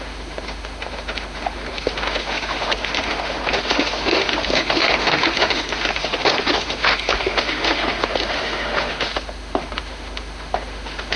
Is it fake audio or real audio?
fake